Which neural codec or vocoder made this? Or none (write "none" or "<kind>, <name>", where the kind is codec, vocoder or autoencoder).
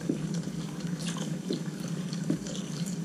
codec, DAC